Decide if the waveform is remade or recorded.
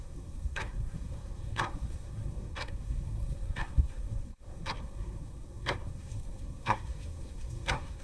remade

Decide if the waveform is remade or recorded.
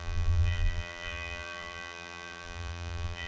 remade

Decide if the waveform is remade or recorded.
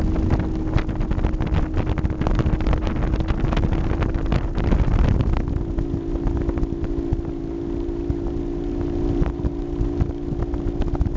recorded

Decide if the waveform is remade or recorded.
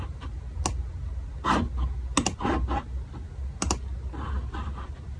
recorded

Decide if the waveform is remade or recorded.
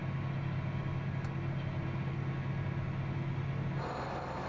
recorded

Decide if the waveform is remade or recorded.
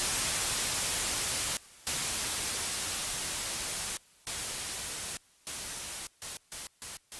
recorded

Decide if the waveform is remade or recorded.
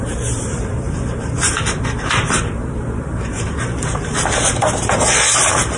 remade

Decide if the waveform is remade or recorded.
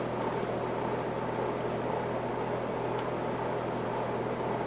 recorded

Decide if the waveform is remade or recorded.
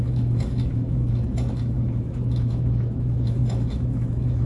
remade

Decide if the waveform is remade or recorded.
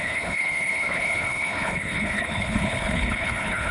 remade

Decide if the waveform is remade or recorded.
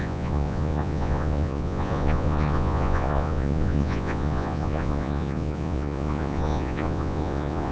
remade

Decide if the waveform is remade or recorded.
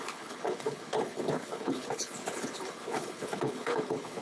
remade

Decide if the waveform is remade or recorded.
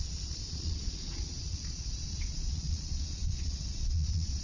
remade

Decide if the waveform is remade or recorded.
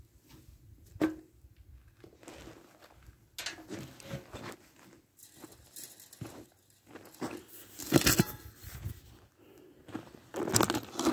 recorded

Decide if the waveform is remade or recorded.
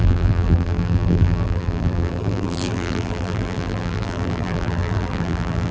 remade